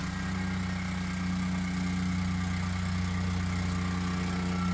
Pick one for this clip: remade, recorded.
recorded